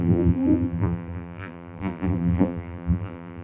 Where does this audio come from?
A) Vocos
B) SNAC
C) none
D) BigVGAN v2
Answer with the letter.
D